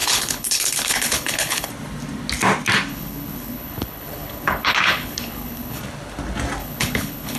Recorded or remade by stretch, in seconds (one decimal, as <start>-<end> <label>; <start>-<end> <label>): 0.0-1.7 remade; 1.7-2.9 recorded; 2.9-5.8 remade; 5.8-6.6 recorded; 6.6-7.4 remade